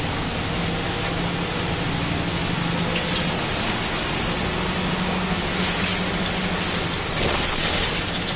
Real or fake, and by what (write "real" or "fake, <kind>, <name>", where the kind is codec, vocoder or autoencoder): real